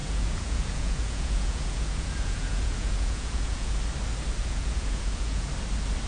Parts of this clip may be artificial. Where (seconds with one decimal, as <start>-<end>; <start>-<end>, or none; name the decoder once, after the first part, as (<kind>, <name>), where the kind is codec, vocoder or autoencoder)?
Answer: 0.0-3.7 (vocoder, Vocos); 4.4-5.5